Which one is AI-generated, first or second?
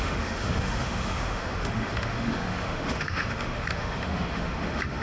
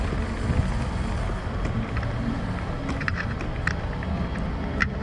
first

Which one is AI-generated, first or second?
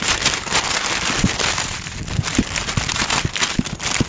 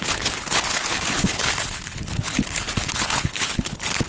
second